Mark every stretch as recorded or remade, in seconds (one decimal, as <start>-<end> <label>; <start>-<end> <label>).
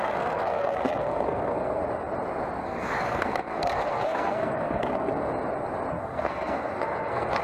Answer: 0.0-1.8 remade; 1.8-2.6 recorded; 2.6-5.1 remade; 5.1-5.9 recorded; 5.9-7.4 remade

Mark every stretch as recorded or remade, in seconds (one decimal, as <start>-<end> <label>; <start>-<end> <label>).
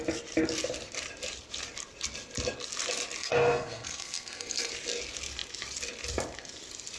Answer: 0.0-3.2 recorded; 3.2-4.7 remade; 4.7-7.0 recorded